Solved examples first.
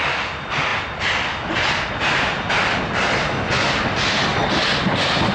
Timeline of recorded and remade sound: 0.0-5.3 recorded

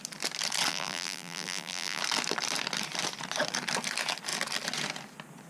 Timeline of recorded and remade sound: 0.0-0.7 recorded; 0.7-2.0 remade; 2.0-5.5 recorded

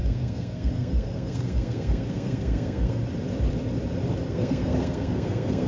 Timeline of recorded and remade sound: 0.0-3.0 remade; 3.0-4.3 recorded; 4.3-5.7 remade

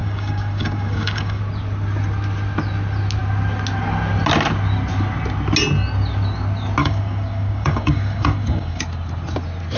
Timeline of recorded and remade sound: 0.0-1.4 remade; 1.4-6.8 recorded; 6.8-8.8 remade; 8.8-9.8 recorded

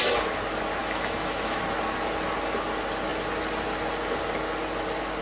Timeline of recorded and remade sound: 0.0-0.8 recorded; 0.8-1.6 remade; 1.6-5.2 recorded

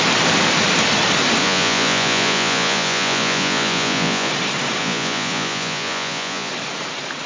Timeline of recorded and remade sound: 0.0-1.4 recorded; 1.4-4.3 remade; 4.3-4.8 recorded; 4.8-6.5 remade; 6.5-7.3 recorded

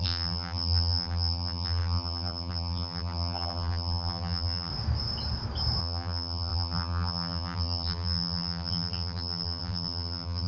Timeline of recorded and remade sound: 0.0-4.7 remade; 4.7-5.8 recorded; 5.8-10.5 remade